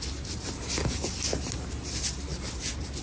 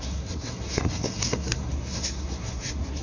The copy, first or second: second